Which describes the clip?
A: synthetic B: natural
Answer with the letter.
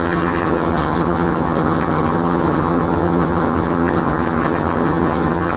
A